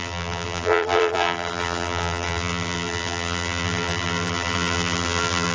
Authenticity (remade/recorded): remade